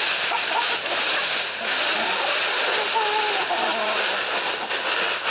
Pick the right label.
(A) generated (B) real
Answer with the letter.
B